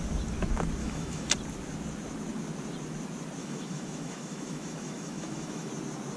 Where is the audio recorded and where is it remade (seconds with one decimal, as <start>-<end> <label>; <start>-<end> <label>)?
0.0-0.8 recorded; 0.8-1.3 remade; 1.3-3.4 recorded; 3.4-5.7 remade; 5.7-6.2 recorded